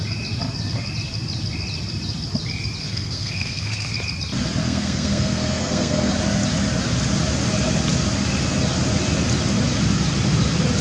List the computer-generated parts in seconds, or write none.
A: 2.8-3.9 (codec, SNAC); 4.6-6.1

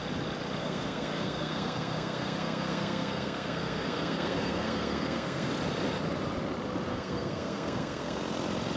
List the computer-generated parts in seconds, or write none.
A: 0.6-5.5 (codec, SNAC); 6.9-8.2